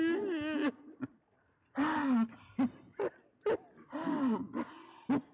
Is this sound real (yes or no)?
yes